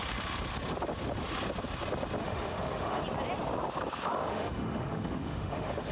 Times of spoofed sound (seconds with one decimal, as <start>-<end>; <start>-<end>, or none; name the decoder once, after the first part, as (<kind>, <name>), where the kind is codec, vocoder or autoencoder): 2.2-3.0 (autoencoder, DAC-VAE); 4.3-5.9